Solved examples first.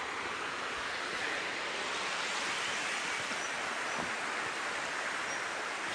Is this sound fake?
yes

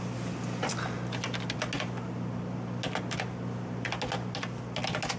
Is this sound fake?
no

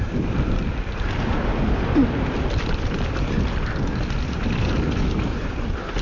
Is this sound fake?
yes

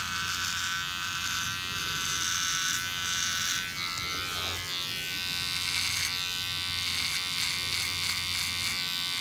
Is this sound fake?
no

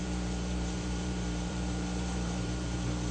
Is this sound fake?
yes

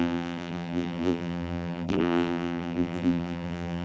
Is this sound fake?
yes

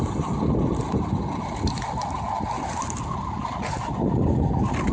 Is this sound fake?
no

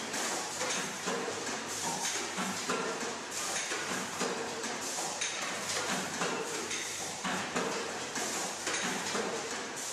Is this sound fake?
yes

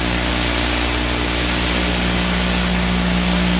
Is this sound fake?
no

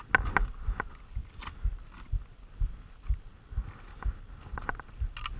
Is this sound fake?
no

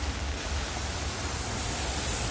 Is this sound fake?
no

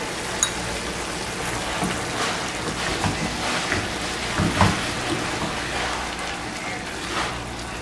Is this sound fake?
no